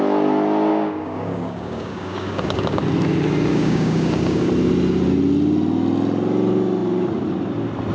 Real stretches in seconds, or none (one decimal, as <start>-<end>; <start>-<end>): 0.0-0.7; 2.8-3.5; 4.5-7.9